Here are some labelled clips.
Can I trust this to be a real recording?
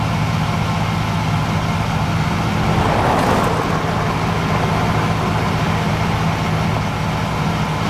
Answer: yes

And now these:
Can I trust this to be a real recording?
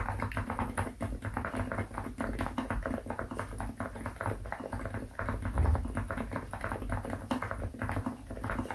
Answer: yes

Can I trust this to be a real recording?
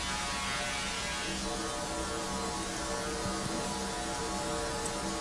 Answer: yes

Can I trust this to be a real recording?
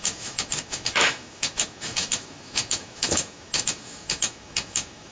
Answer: no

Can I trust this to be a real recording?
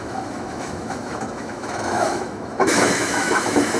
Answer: no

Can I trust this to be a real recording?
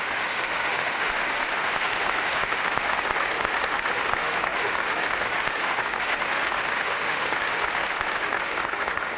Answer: no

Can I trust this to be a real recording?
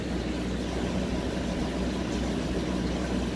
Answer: yes